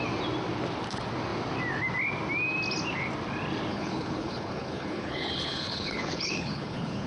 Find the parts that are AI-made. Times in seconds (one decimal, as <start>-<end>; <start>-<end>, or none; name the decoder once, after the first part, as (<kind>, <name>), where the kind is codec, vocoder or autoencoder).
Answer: 3.7-7.1 (codec, HILCodec)